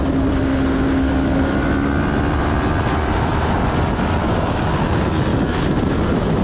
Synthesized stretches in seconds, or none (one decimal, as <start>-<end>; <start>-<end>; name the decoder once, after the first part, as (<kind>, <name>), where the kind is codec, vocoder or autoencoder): 4.2-4.7 (codec, DAC)